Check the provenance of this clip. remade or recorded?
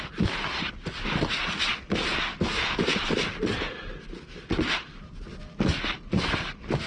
recorded